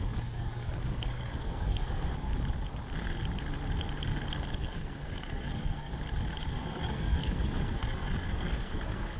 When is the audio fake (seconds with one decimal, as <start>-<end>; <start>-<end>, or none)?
0.0-2.3; 4.6-5.9; 6.5-9.2